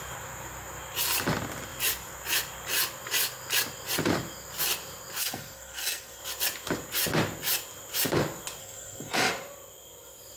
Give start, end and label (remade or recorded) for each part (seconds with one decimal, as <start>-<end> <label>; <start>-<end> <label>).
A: 0.0-5.2 recorded; 5.2-6.2 remade; 6.2-8.6 recorded; 8.6-9.3 remade; 9.3-10.4 recorded